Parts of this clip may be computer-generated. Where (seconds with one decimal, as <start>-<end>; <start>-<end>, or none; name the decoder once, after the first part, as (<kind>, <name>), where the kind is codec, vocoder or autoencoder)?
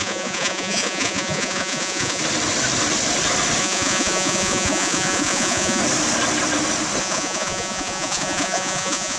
0.0-2.2 (vocoder, Vocos); 3.6-5.8; 7.0-9.2